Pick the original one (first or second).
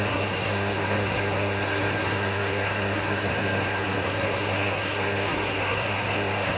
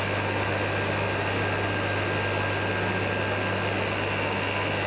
second